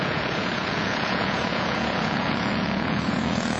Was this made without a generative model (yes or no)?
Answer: no